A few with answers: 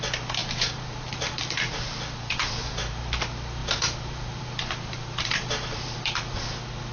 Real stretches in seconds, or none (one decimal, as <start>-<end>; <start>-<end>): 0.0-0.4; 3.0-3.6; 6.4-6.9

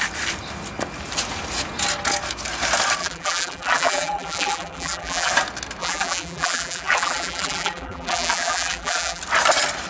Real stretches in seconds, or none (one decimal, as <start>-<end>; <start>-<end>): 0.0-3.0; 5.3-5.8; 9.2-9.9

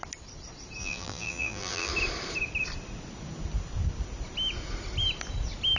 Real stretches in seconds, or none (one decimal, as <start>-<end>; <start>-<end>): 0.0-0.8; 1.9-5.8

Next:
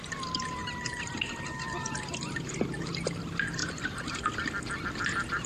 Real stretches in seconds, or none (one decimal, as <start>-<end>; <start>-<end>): 0.0-0.6; 2.5-3.6; 4.2-5.5